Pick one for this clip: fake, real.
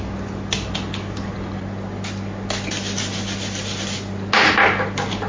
real